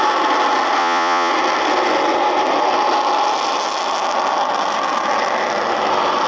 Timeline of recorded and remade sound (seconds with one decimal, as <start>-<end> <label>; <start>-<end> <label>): 0.0-0.8 recorded; 0.8-1.3 remade; 1.3-6.3 recorded